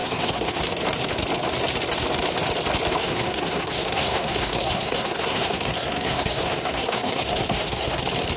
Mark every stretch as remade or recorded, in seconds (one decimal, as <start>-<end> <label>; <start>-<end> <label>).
0.0-0.6 remade; 0.6-3.0 recorded; 3.0-8.0 remade; 8.0-8.4 recorded